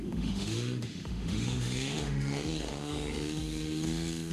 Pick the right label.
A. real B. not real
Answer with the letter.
B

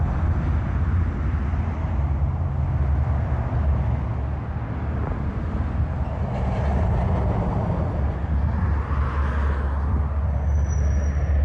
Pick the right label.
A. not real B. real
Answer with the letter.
B